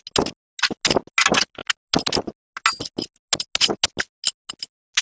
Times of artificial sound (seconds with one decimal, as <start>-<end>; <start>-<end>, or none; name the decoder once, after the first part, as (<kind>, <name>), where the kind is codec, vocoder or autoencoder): none